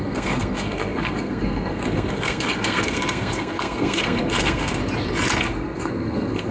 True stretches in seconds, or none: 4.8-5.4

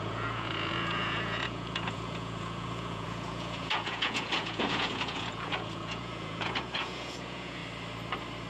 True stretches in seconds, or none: 7.6-8.5

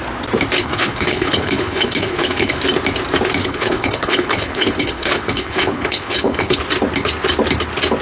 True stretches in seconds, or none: 0.0-0.6; 2.6-3.4; 6.6-8.0

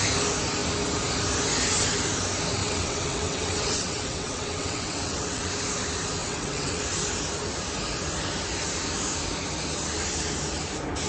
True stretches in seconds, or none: 0.0-2.6; 5.5-6.2; 6.8-11.1